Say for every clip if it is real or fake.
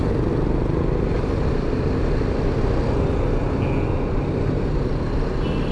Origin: real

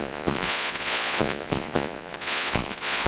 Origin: fake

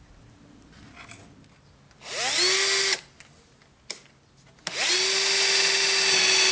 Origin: real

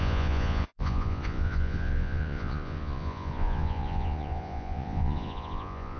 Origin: fake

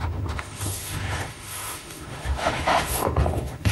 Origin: fake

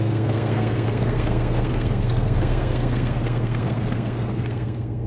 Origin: fake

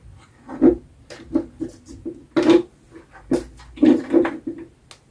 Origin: real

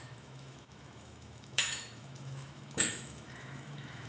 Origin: fake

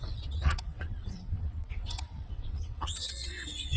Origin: fake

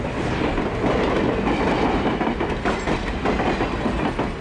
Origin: real